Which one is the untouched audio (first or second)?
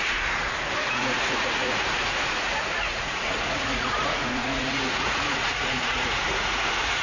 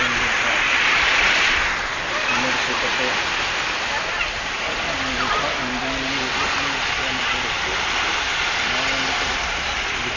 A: second